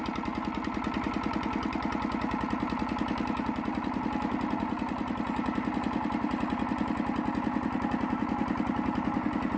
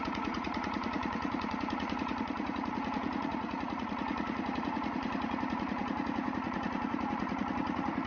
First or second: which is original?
first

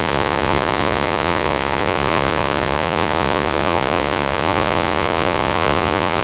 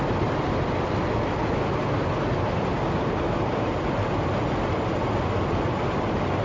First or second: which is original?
second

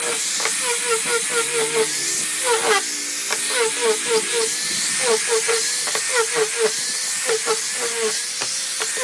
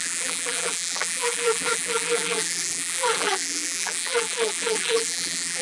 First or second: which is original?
first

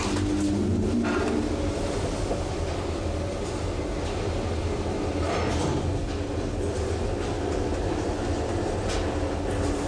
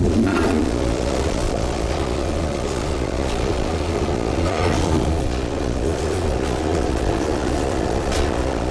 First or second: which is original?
first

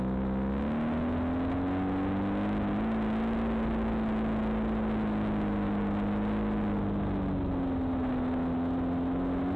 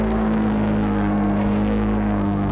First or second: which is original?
first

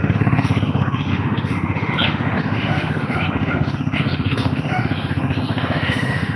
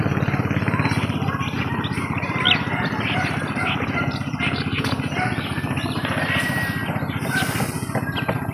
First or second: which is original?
second